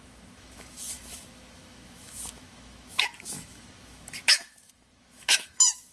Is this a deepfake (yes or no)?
yes